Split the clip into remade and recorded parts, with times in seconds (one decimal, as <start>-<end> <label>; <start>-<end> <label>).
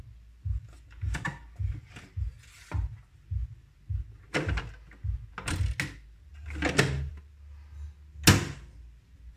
0.0-9.4 recorded